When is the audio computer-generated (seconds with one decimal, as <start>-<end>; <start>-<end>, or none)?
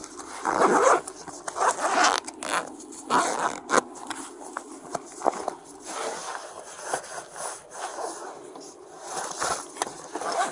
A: none